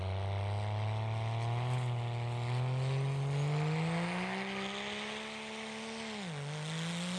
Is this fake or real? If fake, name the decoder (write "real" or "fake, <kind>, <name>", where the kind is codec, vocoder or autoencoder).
real